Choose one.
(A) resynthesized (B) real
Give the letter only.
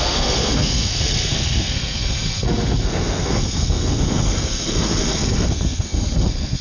A